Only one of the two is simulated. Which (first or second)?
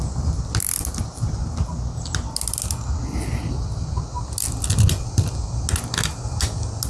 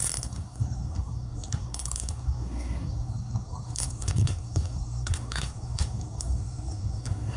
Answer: second